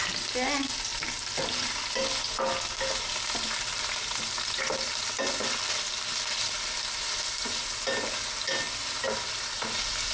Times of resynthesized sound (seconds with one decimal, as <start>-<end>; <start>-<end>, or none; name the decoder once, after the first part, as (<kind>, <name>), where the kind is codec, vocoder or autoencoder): none